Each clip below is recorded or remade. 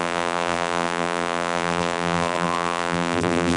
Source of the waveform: remade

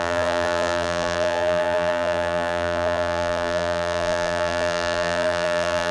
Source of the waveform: remade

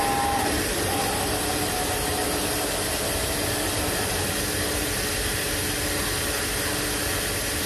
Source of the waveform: recorded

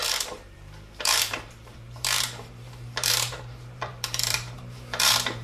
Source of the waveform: remade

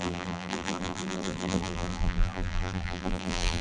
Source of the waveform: remade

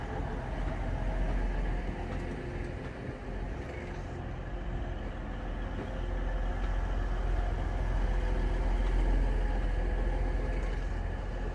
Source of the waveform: recorded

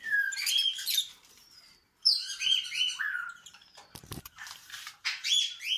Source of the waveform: remade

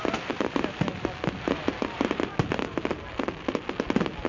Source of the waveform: recorded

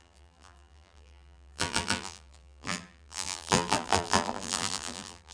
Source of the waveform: remade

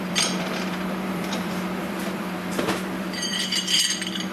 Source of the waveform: remade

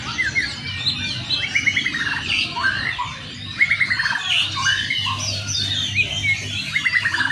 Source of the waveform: recorded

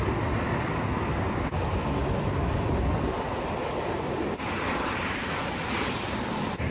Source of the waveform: recorded